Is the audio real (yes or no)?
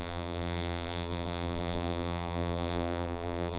no